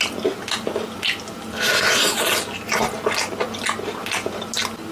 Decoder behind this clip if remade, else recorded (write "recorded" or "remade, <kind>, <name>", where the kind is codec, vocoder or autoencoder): recorded